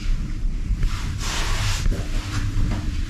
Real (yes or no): no